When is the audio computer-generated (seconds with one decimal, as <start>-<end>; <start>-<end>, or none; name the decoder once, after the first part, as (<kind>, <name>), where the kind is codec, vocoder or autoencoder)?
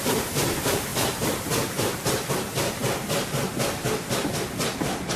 none